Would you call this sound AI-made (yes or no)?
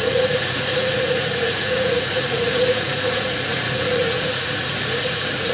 yes